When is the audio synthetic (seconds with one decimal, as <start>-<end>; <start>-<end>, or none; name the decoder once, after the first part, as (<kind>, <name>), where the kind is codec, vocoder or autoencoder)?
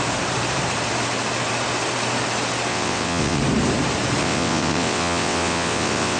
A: 2.7-3.4 (vocoder, WaveNeXt); 4.2-6.2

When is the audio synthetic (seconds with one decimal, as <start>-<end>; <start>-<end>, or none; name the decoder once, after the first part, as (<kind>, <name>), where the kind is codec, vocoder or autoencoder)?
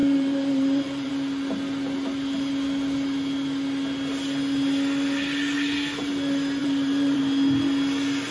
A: 0.0-1.1 (vocoder, BigVGAN v2); 6.6-7.2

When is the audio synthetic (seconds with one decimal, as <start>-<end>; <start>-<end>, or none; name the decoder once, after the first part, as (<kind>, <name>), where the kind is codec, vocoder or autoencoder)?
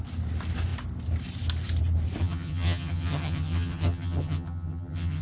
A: 2.2-5.2 (vocoder, HiFi-GAN)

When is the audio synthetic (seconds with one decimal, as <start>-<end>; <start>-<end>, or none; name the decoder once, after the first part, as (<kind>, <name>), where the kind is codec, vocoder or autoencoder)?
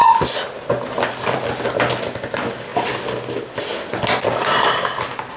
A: none